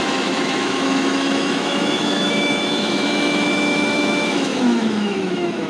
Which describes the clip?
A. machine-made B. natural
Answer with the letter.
A